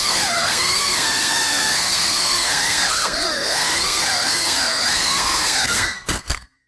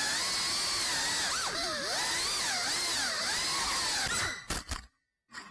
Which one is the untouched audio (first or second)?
second